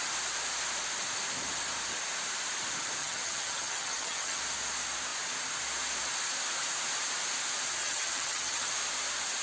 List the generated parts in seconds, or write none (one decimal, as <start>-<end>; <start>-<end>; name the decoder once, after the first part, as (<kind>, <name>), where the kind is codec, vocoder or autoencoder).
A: 3.0-4.4 (vocoder, HiFi-GAN); 7.8-8.7